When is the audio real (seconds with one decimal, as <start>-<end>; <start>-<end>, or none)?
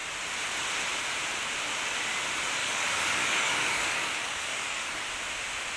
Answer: 0.0-2.6; 5.1-5.8